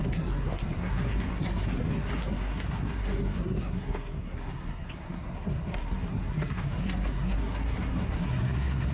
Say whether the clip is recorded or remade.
remade